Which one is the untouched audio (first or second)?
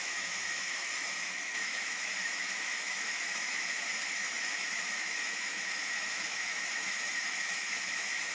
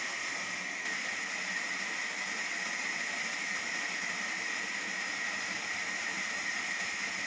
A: second